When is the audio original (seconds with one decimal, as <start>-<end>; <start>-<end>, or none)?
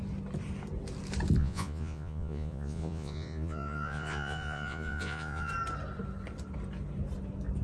0.0-1.4; 5.5-7.6